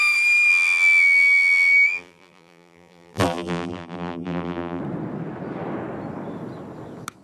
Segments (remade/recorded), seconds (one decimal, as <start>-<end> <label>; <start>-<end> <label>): 0.0-0.5 recorded; 0.5-4.8 remade; 4.8-7.2 recorded